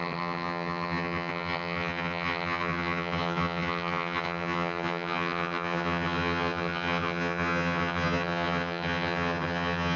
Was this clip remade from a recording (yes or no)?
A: yes